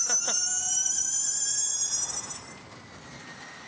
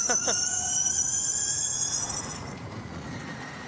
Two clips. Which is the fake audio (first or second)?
second